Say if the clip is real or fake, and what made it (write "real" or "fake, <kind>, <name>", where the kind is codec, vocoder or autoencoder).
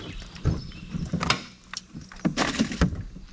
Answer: real